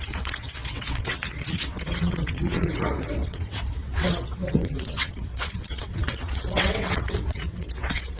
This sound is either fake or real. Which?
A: fake